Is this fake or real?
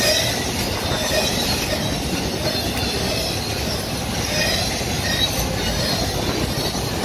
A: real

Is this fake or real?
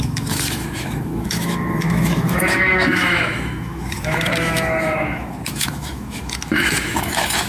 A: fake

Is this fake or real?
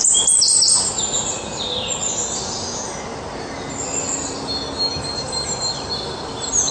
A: real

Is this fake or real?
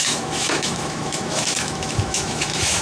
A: fake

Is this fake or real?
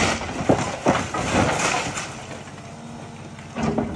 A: real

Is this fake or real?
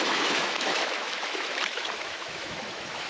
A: fake